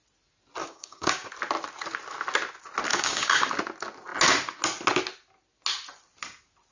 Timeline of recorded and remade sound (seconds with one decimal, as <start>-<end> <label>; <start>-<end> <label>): 0.0-0.6 recorded; 0.6-1.3 remade; 1.3-2.9 recorded; 2.9-3.5 remade; 3.5-6.7 recorded